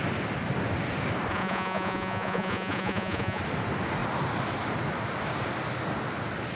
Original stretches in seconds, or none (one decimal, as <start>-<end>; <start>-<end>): 0.0-1.3; 3.4-6.6